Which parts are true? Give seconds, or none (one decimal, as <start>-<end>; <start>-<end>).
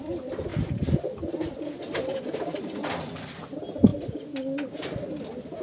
0.0-5.6